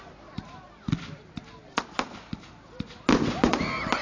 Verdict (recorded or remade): recorded